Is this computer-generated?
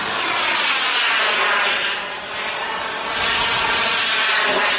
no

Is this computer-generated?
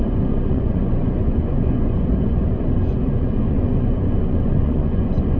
yes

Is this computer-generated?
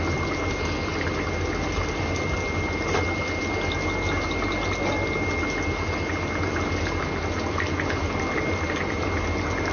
no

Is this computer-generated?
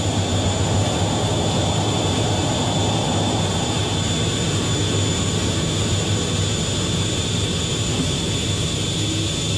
no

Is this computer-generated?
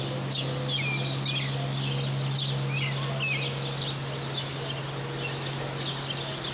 no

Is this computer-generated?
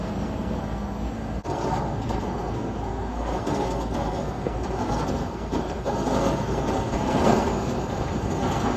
yes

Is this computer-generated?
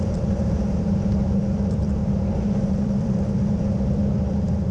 yes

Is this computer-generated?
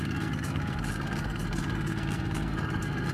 yes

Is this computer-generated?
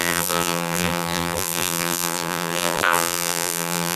yes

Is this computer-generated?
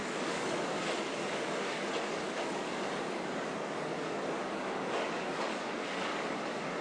yes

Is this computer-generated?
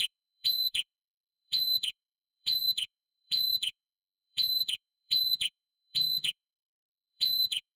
yes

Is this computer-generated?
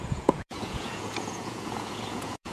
yes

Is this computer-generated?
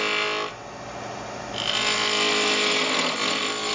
no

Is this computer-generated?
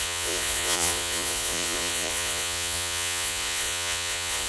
yes